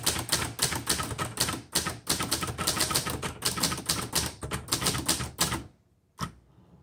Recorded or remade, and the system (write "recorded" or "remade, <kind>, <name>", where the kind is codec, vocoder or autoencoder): recorded